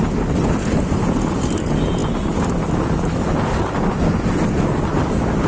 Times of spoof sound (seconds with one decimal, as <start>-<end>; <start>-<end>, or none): none